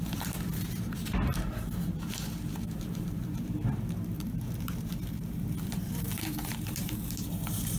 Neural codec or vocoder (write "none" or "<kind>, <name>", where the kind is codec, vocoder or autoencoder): vocoder, BigVGAN v2